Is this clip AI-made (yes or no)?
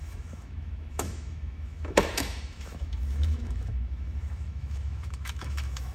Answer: yes